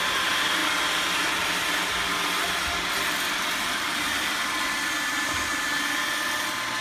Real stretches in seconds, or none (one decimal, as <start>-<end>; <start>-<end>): 0.0-6.8